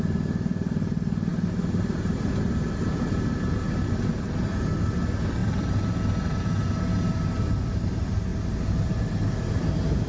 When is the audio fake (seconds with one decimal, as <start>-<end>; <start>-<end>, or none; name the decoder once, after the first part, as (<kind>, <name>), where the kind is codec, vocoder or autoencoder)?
none